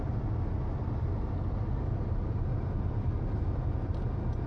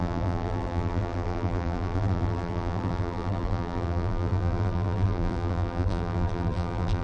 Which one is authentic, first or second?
first